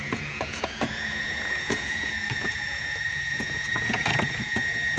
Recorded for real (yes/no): no